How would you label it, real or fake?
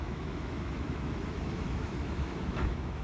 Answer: fake